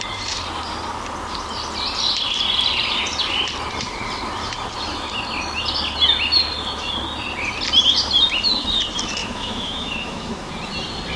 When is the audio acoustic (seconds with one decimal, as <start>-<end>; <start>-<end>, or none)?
0.0-9.2; 10.5-11.2